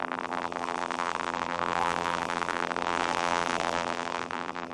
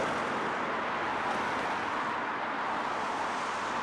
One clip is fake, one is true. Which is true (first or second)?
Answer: second